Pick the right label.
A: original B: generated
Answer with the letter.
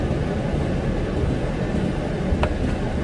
A